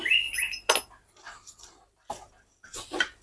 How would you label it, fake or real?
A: real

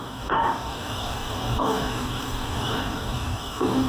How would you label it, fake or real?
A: fake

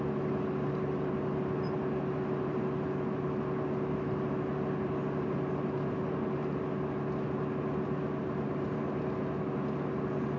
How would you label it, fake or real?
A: real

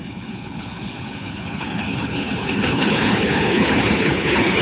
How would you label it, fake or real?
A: fake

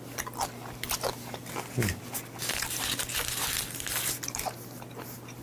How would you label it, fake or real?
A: real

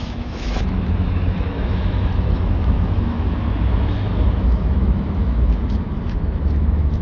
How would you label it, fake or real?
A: fake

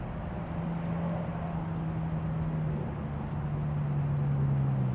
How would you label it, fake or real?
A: real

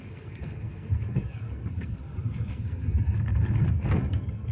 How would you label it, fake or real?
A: fake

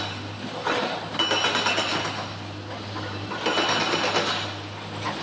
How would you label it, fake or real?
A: real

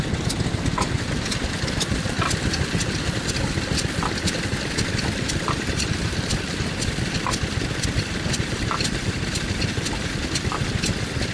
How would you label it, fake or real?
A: fake